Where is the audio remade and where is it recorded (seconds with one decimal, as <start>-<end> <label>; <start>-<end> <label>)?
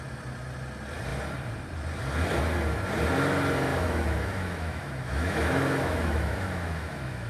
0.0-3.7 recorded; 3.7-7.3 remade